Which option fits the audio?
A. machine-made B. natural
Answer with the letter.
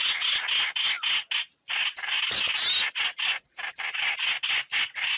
B